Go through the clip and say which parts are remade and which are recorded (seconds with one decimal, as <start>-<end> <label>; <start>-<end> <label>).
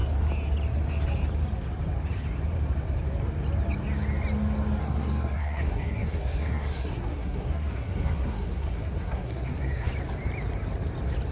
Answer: 0.0-4.8 recorded; 4.8-9.9 remade; 9.9-11.3 recorded